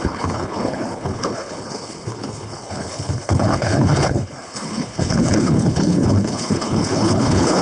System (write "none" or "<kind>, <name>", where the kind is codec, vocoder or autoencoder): codec, HILCodec